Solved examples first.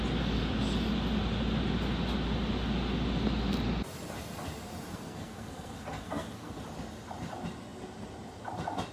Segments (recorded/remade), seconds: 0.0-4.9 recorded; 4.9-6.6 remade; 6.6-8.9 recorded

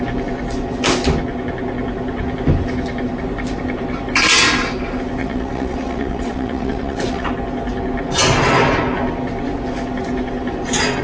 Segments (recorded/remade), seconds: 0.0-5.2 recorded; 5.2-7.3 remade; 7.3-11.0 recorded

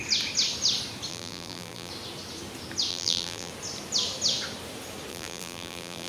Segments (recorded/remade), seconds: 0.0-1.1 recorded; 1.1-1.9 remade; 1.9-2.9 recorded; 2.9-3.5 remade; 3.5-5.1 recorded; 5.1-6.1 remade